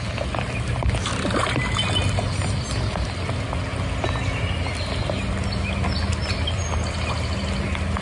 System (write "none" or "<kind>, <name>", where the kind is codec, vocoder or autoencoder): none